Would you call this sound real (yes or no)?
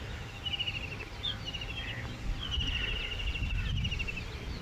yes